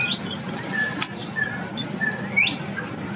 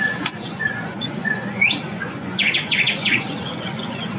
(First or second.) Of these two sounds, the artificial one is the second